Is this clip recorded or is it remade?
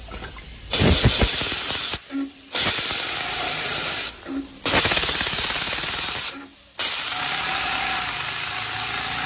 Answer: recorded